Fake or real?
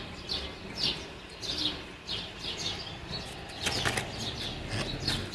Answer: real